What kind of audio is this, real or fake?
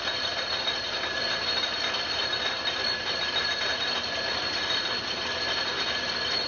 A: real